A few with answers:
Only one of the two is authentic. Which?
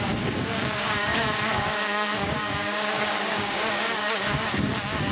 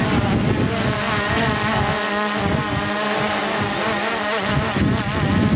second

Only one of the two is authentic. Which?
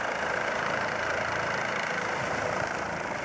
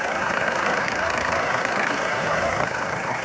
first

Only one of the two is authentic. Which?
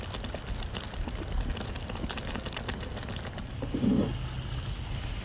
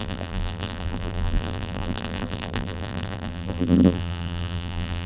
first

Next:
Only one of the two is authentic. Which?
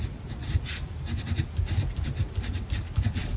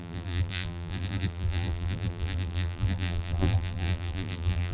first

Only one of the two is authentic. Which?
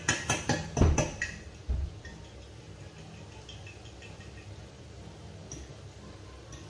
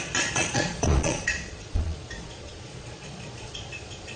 first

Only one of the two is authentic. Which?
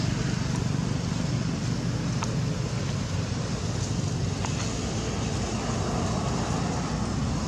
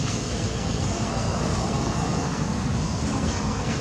first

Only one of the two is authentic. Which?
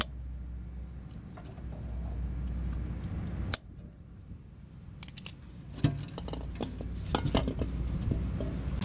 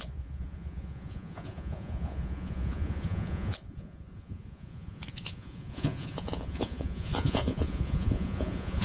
first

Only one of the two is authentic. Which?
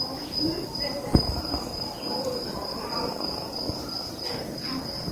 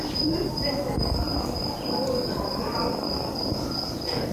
second